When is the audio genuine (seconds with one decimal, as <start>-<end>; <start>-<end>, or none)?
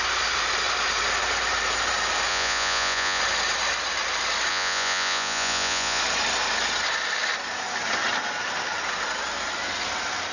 0.0-2.3; 3.2-4.5; 6.0-10.3